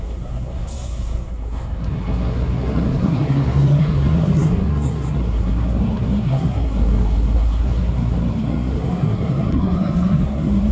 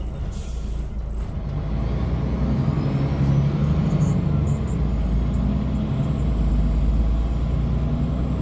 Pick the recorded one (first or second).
second